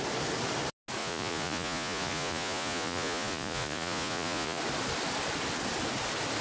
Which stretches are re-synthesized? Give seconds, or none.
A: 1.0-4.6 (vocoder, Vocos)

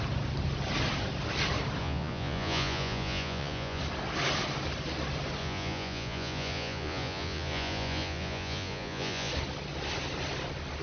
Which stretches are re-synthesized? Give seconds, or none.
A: 1.8-3.8 (vocoder, Vocos); 5.4-9.3

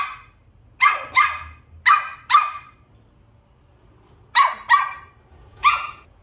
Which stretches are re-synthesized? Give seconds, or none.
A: 5.5-6.2 (vocoder, Vocos)

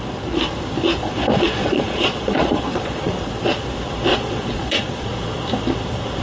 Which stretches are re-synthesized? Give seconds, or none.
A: 1.0-3.2 (vocoder, Vocos); 4.1-5.1

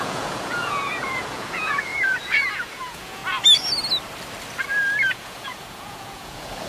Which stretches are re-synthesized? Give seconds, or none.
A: 0.0-3.2 (vocoder, Vocos); 5.1-6.7